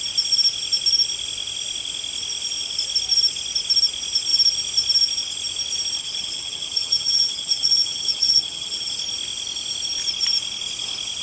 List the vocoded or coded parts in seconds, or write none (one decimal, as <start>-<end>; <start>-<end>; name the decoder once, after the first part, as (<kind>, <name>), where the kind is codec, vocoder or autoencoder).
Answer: 6.0-8.9 (vocoder, HiFi-GAN)